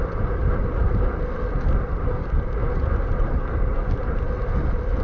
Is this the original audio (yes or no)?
yes